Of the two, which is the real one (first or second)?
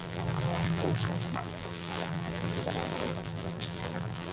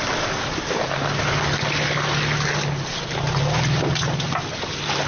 second